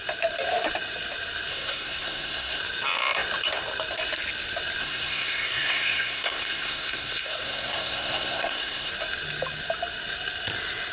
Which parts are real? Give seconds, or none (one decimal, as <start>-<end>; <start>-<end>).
0.0-1.5; 2.6-4.8; 8.9-10.9